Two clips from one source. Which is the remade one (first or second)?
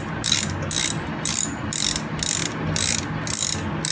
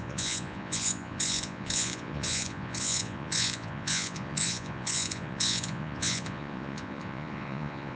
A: second